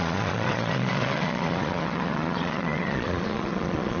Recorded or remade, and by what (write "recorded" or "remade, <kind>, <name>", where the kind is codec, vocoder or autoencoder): remade, vocoder, Vocos